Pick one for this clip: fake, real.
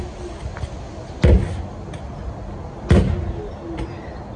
real